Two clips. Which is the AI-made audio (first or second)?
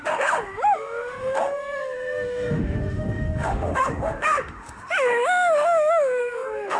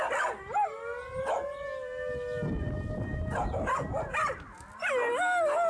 first